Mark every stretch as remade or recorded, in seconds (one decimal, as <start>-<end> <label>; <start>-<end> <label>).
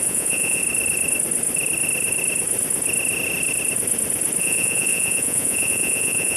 0.0-0.6 remade; 0.6-4.4 recorded; 4.4-6.4 remade